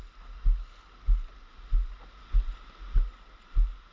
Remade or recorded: recorded